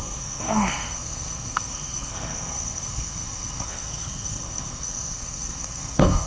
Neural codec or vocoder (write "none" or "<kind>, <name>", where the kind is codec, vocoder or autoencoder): codec, SNAC